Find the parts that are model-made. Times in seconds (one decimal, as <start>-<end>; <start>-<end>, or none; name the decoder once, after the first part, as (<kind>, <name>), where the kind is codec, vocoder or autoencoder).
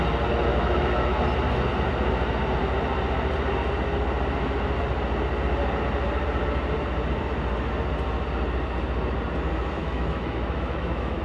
0.5-1.2 (autoencoder, DAC-VAE); 9.8-11.2